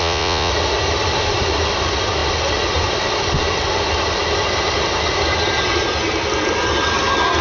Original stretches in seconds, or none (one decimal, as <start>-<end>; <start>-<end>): 0.5-7.4